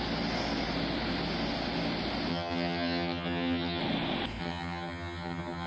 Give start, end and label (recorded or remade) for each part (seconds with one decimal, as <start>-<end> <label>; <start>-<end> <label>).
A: 0.0-2.3 recorded; 2.3-3.8 remade; 3.8-4.4 recorded; 4.4-5.7 remade